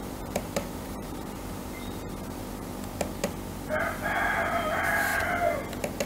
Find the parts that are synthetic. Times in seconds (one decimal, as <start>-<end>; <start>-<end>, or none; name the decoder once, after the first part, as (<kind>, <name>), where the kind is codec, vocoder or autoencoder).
0.0-2.4 (vocoder, BigVGAN v2); 4.5-5.1